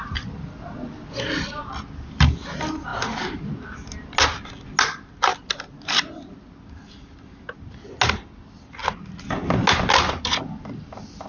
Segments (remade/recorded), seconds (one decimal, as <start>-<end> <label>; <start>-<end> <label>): 0.0-11.3 recorded